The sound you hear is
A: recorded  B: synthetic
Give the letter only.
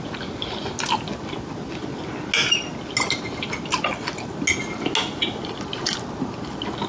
A